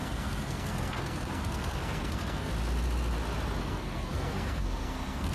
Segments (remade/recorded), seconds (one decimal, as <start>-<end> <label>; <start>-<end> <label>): 0.0-2.5 remade; 2.5-3.6 recorded; 3.6-5.3 remade